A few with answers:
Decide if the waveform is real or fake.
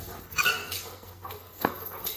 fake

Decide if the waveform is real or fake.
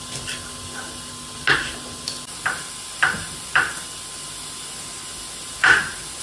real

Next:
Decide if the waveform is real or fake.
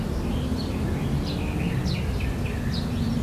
real